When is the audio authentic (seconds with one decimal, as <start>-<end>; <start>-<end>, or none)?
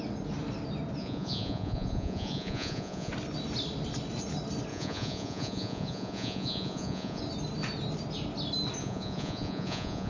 0.0-1.0; 3.1-4.7; 7.2-8.8